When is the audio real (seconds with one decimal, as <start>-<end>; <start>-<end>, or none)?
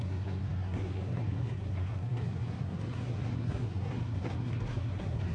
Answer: none